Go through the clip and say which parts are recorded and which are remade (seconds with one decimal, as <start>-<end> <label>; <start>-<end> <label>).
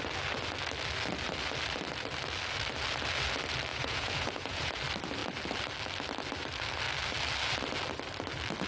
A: 0.0-3.7 recorded; 3.7-4.7 remade; 4.7-8.7 recorded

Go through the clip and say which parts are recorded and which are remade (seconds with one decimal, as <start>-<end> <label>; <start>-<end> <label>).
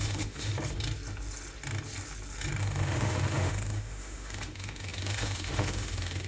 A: 0.0-0.5 remade; 0.5-2.6 recorded; 2.6-6.3 remade